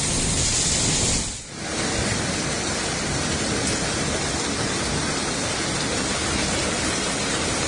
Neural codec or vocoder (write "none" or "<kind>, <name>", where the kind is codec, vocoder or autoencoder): none